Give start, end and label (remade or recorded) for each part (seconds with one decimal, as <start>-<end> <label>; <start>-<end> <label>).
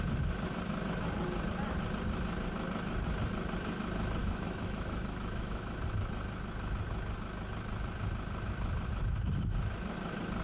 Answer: 0.0-4.2 recorded; 4.2-5.7 remade; 5.7-10.4 recorded